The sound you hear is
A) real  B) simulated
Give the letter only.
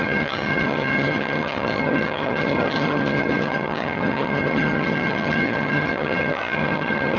B